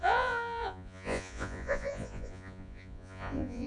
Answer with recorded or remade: remade